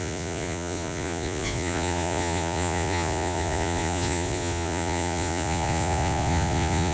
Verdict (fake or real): fake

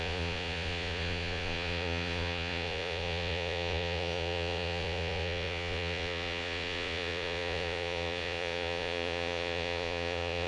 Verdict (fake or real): fake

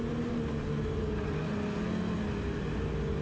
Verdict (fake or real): real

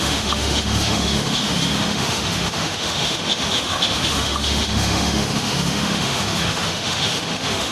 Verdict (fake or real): fake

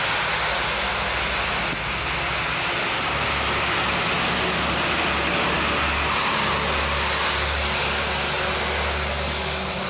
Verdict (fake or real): real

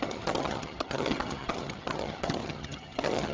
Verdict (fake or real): fake